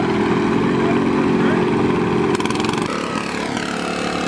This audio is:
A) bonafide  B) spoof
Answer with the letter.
A